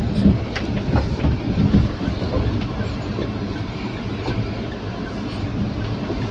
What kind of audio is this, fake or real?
real